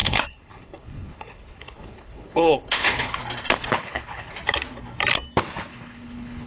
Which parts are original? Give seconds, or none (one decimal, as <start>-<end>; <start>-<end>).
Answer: 3.2-3.8; 4.3-5.7